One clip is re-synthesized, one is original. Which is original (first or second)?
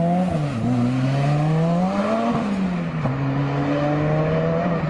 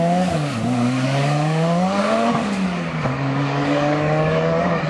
first